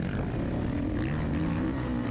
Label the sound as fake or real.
real